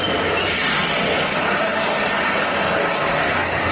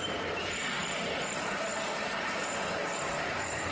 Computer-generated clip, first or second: second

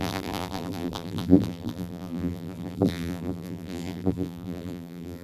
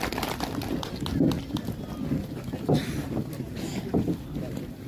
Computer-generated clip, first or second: first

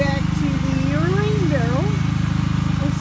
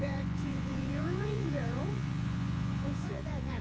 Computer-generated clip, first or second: second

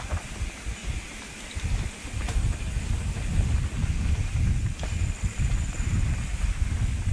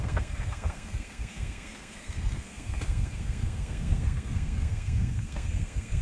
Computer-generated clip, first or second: second